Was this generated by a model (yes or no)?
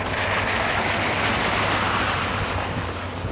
no